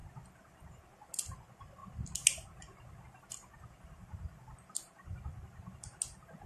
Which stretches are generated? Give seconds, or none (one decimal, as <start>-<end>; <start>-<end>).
none

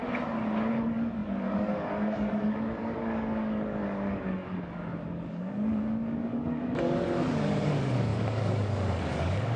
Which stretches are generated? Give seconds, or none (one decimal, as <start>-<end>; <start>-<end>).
0.7-9.6

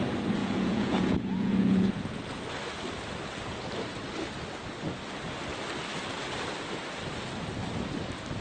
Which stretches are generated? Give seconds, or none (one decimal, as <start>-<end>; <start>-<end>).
0.4-2.2

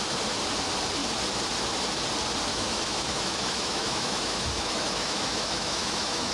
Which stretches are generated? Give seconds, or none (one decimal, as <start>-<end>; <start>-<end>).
2.5-6.3

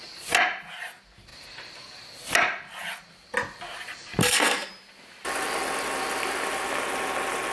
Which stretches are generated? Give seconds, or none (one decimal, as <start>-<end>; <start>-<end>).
4.2-4.7

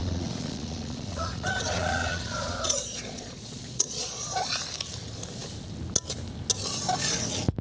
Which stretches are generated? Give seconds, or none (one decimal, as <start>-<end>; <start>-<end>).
0.0-4.5

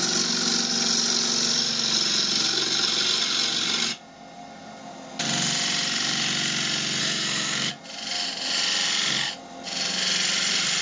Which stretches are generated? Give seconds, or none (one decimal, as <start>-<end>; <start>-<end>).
7.0-7.7